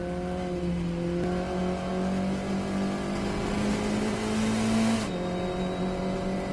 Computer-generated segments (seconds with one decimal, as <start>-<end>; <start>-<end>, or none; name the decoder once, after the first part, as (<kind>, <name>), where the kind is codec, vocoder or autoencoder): none

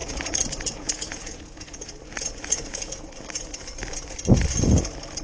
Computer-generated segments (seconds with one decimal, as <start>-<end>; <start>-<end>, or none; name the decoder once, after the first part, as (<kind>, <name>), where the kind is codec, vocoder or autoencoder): 0.0-3.1 (vocoder, Vocos)

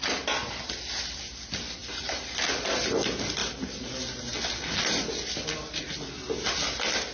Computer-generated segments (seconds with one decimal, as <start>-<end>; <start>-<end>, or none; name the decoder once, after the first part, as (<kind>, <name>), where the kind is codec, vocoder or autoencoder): 1.8-2.3 (vocoder, BigVGAN v2)

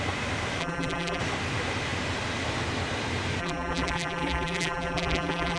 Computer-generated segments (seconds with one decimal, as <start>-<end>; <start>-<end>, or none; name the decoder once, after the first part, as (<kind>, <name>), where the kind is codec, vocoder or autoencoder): 0.6-1.2 (vocoder, BigVGAN v2); 3.4-5.6

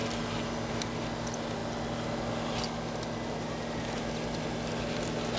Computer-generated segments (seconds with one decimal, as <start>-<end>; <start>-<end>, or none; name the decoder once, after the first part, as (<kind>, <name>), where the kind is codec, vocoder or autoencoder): none

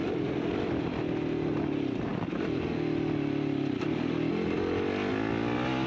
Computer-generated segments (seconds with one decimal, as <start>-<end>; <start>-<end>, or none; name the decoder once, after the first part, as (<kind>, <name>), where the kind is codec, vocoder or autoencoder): none